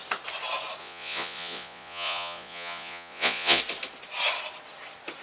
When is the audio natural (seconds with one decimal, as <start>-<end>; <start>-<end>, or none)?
0.0-0.8; 3.6-5.2